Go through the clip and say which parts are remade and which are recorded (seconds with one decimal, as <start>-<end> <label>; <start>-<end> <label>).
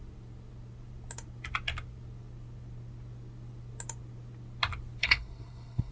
0.0-5.0 recorded; 5.0-5.9 remade